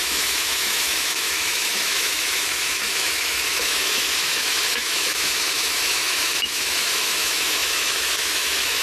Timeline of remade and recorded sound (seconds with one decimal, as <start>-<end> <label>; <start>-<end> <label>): 0.0-8.8 remade